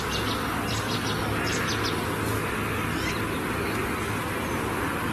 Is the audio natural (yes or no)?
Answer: yes